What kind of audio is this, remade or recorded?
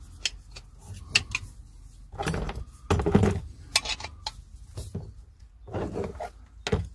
recorded